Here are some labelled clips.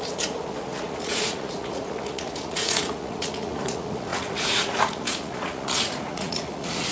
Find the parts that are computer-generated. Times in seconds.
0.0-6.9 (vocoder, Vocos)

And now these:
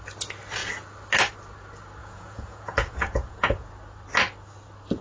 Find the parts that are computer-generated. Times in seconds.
2.0-3.7 (vocoder, Vocos)

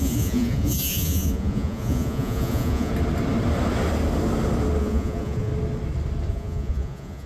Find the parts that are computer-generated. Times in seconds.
0.0-2.9 (vocoder, Vocos); 4.8-5.5; 6.3-7.3

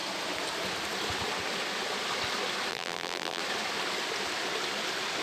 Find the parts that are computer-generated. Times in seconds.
2.7-3.4 (vocoder, BigVGAN v2)

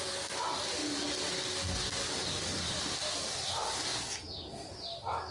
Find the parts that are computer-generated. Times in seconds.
none

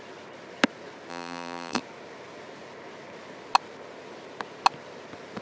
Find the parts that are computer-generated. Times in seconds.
1.1-1.8 (vocoder, BigVGAN v2)